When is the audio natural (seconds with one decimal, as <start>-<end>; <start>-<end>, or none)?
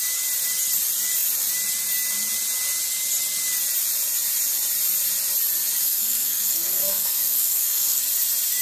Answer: 0.0-5.8; 8.0-8.6